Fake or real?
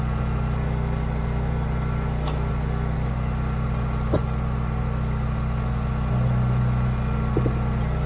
real